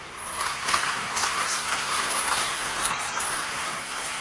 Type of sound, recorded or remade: remade